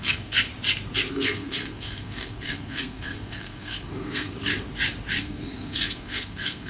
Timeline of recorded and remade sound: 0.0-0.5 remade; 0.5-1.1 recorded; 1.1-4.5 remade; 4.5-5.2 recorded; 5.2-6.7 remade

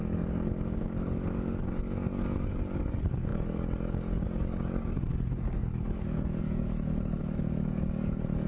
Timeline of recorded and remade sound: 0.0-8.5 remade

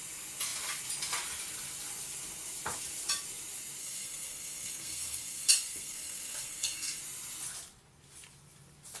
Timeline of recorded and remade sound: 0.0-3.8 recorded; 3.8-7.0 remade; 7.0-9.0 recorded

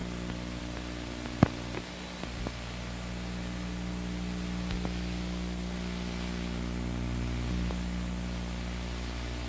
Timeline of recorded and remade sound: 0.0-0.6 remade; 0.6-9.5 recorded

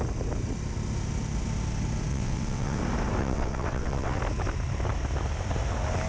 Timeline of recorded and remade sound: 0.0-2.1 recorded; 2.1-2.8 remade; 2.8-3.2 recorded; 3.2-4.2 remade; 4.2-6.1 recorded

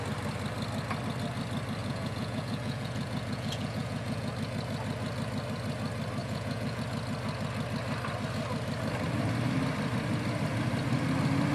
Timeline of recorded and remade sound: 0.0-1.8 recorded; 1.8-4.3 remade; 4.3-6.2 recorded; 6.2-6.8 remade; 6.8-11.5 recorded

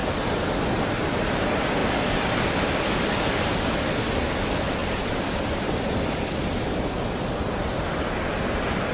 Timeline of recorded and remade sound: 0.0-0.8 remade; 0.8-1.8 recorded; 1.8-3.6 remade; 3.6-4.8 recorded; 4.8-6.8 remade; 6.8-8.9 recorded

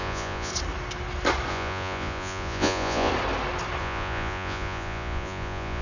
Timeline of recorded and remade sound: 0.0-0.5 remade; 0.5-1.5 recorded; 1.5-3.1 remade; 3.1-3.8 recorded; 3.8-5.8 remade